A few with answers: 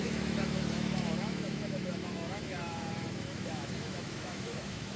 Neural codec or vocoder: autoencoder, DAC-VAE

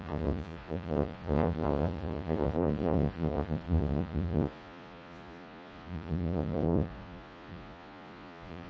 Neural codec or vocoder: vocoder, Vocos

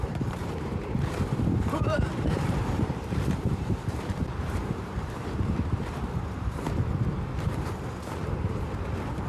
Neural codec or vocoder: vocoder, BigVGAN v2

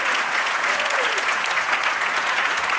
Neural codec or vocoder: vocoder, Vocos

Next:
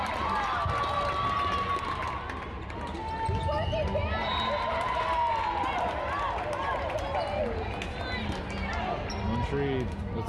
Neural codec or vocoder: none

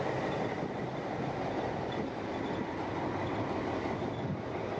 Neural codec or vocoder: none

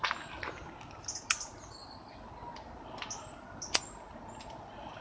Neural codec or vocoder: none